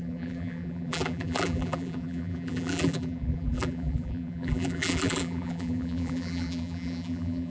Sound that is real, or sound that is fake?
fake